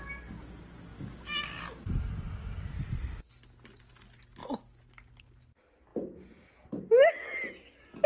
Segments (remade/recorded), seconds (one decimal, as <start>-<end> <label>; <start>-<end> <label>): 0.0-0.9 recorded; 0.9-2.1 remade; 2.1-8.1 recorded